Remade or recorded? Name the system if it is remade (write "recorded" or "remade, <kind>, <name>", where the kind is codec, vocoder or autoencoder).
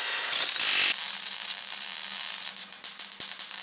recorded